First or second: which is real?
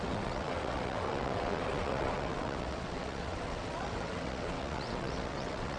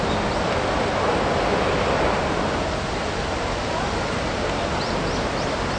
second